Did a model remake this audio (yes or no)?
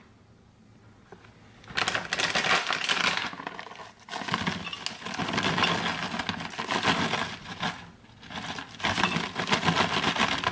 no